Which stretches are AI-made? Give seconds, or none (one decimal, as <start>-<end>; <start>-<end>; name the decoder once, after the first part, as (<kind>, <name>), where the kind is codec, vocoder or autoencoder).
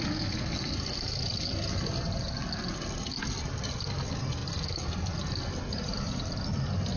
none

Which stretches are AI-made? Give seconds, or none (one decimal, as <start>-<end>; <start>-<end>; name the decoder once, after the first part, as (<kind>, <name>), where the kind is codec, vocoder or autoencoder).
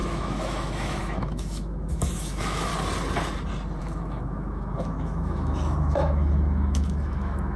0.0-2.7 (autoencoder, DAC-VAE); 3.8-7.6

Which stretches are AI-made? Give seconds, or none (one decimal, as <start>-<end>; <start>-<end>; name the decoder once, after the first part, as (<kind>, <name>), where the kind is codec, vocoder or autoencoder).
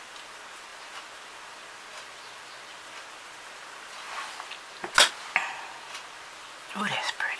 none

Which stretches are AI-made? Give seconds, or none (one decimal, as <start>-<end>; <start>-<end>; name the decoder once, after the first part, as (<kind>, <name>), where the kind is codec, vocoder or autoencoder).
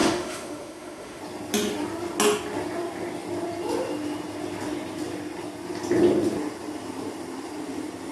0.0-1.2 (autoencoder, DAC-VAE)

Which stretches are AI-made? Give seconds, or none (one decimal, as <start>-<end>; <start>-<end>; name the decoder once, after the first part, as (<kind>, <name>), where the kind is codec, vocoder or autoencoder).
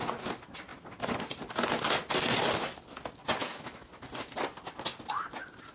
3.4-3.9 (autoencoder, DAC-VAE)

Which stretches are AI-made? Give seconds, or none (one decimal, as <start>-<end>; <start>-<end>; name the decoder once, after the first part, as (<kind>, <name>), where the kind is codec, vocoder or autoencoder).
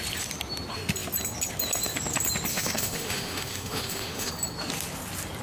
2.5-4.3 (autoencoder, DAC-VAE)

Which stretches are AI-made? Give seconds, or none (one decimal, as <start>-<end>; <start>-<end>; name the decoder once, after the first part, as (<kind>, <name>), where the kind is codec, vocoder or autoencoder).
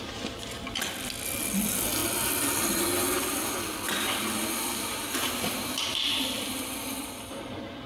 none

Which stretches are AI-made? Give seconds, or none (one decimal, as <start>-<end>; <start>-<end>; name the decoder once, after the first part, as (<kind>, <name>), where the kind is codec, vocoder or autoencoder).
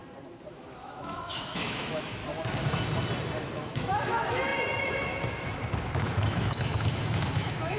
0.5-2.2 (autoencoder, DAC-VAE); 3.4-7.8